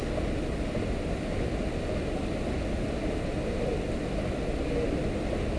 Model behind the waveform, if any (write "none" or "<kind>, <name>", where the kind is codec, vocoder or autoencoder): none